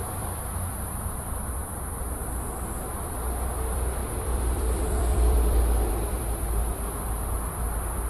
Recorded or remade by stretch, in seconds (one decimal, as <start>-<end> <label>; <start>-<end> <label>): 0.0-1.6 remade; 1.6-3.1 recorded; 3.1-8.1 remade